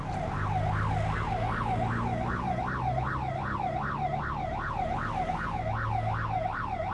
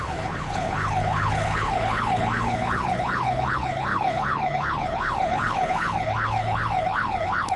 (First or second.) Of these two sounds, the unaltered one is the first